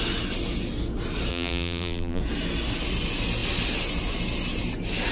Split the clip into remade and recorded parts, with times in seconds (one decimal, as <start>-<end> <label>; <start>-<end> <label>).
0.0-1.3 recorded; 1.3-2.2 remade; 2.2-5.1 recorded